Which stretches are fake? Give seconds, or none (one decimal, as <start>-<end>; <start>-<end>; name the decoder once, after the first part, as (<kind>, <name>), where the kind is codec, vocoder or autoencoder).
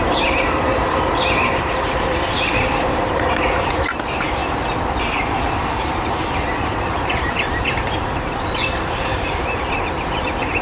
0.0-4.4 (vocoder, BigVGAN v2); 5.4-10.6